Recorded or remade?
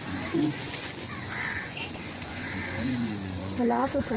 remade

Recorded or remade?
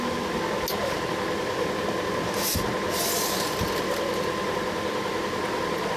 recorded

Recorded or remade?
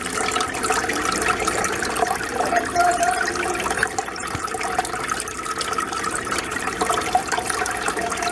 remade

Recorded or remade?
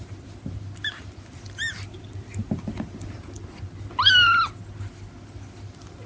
recorded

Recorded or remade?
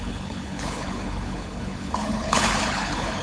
remade